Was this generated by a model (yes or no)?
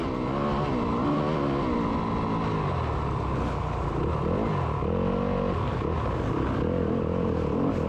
no